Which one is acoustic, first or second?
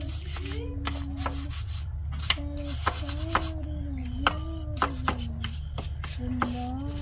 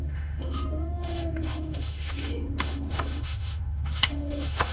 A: first